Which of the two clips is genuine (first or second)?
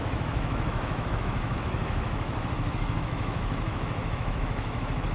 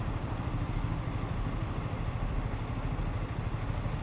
second